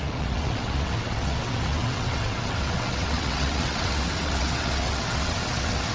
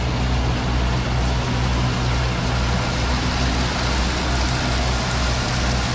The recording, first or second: second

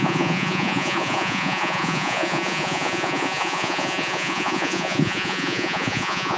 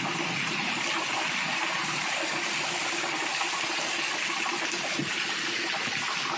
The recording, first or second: second